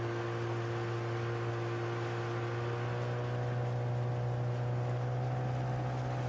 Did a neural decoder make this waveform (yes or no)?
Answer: no